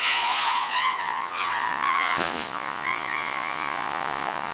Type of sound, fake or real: fake